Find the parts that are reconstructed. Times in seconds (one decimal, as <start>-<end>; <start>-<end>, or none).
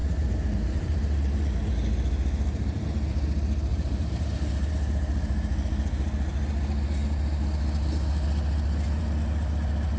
0.0-1.7; 3.7-4.7